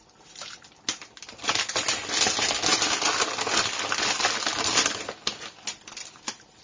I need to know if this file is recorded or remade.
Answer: recorded